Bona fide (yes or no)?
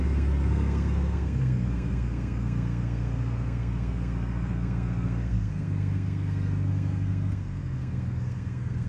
no